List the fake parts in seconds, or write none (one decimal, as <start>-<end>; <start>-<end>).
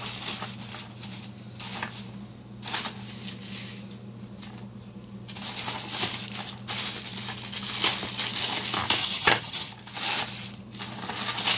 9.0-9.7